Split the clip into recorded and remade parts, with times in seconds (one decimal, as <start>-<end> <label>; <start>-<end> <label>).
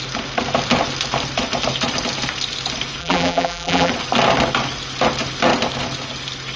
0.0-3.0 recorded; 3.0-3.9 remade; 3.9-6.6 recorded